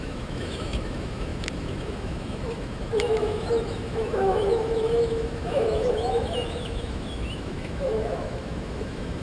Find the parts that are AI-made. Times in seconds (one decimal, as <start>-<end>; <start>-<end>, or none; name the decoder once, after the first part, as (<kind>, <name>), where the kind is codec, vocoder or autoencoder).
0.0-9.2 (autoencoder, DAC-VAE)